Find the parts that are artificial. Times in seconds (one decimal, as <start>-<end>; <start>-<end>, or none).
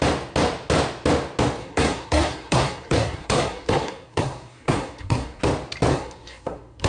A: 1.6-5.4; 5.9-6.9